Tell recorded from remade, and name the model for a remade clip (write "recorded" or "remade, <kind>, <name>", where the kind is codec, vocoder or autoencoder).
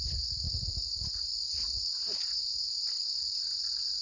recorded